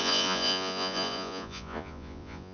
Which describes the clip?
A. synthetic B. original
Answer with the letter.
A